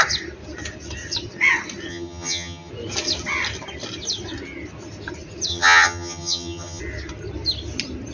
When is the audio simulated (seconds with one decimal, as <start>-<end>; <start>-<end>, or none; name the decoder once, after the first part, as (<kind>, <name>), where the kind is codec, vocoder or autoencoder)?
1.9-2.7 (vocoder, HiFi-GAN); 5.5-6.8